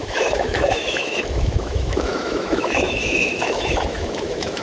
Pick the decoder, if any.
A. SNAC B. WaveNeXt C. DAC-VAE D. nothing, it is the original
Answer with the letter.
C